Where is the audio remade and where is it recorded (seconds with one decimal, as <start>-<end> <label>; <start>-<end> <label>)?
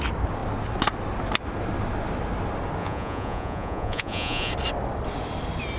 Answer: 0.0-2.8 recorded; 2.8-4.5 remade; 4.5-5.8 recorded